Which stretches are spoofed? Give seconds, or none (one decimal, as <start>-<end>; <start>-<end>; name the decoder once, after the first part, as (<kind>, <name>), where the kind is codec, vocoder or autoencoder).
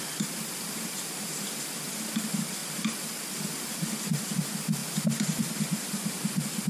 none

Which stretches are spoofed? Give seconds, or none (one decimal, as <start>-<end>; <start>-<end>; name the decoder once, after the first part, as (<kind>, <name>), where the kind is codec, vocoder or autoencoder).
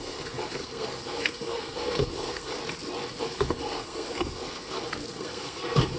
0.0-2.6 (codec, SNAC); 3.2-6.0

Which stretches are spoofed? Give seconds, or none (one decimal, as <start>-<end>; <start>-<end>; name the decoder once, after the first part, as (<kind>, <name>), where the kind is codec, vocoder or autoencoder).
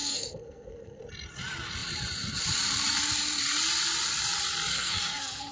0.0-1.0 (codec, SNAC); 4.7-5.5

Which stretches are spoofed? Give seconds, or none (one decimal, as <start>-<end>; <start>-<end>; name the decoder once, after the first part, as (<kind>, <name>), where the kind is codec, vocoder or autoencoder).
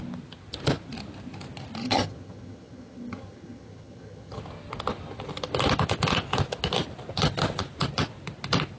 1.8-4.4 (vocoder, HiFi-GAN)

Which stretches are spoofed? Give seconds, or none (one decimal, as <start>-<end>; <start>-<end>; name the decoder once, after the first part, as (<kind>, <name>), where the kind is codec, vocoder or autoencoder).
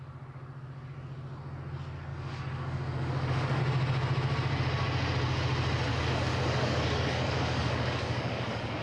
2.1-3.6 (codec, DAC); 5.9-8.8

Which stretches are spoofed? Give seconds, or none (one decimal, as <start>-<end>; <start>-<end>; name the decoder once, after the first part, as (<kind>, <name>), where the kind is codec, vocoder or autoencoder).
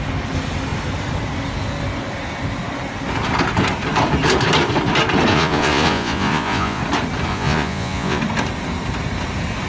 5.3-6.8 (vocoder, Vocos); 7.3-8.2